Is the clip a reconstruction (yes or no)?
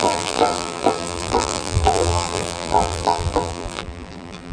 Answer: yes